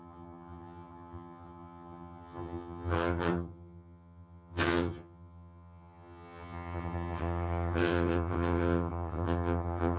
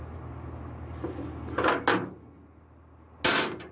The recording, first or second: second